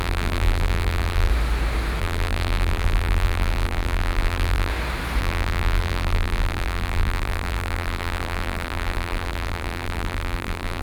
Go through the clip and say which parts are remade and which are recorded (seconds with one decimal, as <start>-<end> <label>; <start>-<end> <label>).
0.0-1.3 remade; 1.3-2.0 recorded; 2.0-4.7 remade; 4.7-5.2 recorded; 5.2-10.8 remade